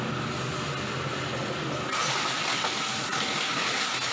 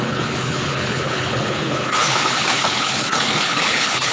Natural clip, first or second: first